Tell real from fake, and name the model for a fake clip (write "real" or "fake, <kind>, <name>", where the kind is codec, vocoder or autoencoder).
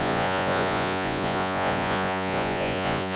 fake, vocoder, Vocos